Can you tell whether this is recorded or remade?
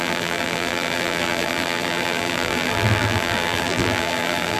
remade